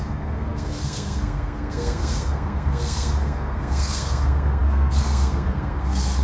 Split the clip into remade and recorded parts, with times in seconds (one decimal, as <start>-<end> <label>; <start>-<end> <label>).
0.0-6.2 remade

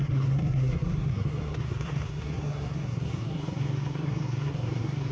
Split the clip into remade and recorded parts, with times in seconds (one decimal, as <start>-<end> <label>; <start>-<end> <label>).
0.0-5.1 remade

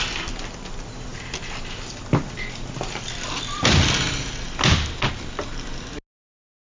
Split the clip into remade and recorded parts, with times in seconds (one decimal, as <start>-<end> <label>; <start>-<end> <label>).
0.0-6.8 recorded

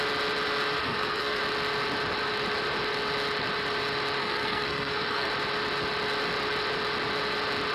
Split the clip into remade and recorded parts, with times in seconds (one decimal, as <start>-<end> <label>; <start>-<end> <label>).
0.0-0.8 recorded; 0.8-1.4 remade; 1.4-4.2 recorded; 4.2-5.3 remade; 5.3-7.7 recorded

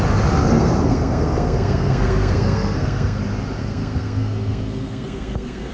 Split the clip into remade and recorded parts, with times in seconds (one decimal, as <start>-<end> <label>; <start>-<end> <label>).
0.0-0.5 recorded; 0.5-3.2 remade; 3.2-3.6 recorded; 3.6-5.7 remade